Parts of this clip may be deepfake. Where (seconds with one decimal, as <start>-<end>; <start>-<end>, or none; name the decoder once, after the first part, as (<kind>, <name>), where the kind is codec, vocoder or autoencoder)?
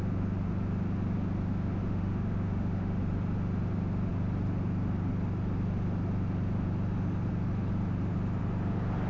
1.8-3.0 (autoencoder, DAC-VAE)